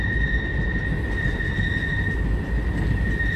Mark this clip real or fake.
real